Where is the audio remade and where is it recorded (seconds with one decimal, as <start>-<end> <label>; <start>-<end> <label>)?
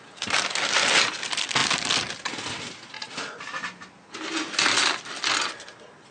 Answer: 0.0-6.1 recorded